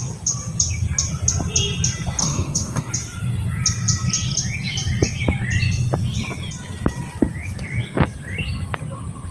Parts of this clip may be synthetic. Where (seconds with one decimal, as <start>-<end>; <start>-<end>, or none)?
2.2-2.9